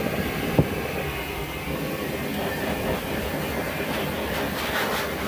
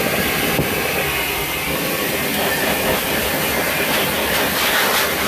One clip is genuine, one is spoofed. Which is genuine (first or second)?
first